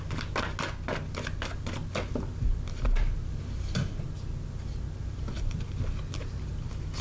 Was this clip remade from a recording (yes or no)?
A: no